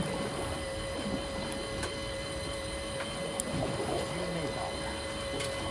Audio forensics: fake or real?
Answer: real